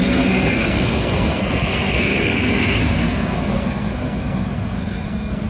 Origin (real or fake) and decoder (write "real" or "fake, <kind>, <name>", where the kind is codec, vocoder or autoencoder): fake, codec, SNAC